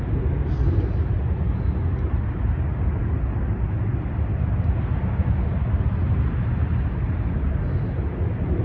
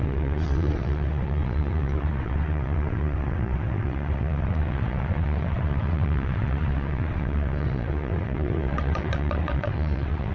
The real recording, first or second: first